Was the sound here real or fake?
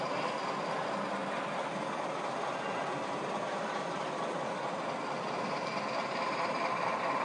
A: real